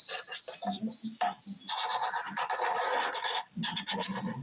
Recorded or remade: recorded